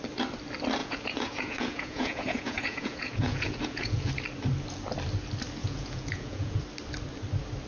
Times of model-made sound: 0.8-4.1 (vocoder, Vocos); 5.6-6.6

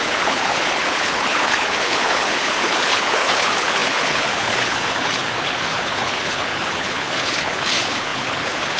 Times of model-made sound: 0.0-8.8 (codec, HILCodec)

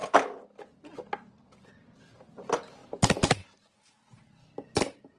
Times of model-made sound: none

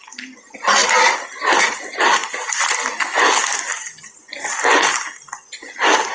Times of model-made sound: none

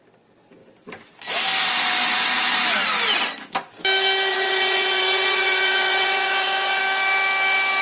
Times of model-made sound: 4.3-6.8 (vocoder, Vocos)